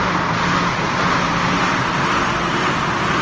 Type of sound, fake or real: real